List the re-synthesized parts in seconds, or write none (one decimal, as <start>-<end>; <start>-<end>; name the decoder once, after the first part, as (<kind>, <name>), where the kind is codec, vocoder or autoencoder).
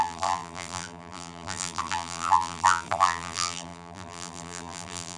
0.0-5.2 (vocoder, BigVGAN v2)